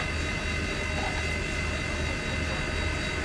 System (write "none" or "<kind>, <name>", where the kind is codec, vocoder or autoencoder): none